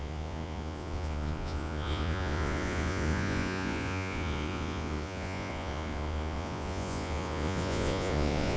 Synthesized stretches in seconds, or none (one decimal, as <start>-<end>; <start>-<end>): 0.0-8.6